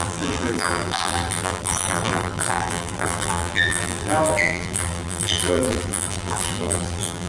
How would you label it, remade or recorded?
remade